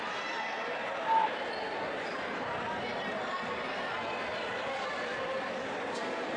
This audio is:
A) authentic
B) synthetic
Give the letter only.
B